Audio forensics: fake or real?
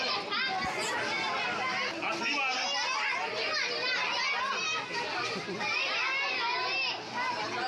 real